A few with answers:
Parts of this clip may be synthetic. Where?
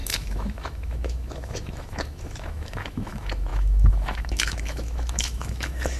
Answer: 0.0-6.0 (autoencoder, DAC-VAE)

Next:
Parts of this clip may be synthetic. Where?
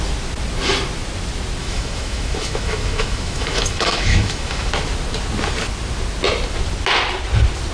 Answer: 1.6-4.7 (autoencoder, DAC-VAE)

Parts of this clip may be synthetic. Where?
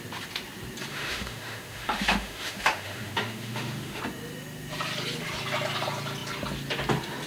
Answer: 0.9-4.0 (autoencoder, DAC-VAE)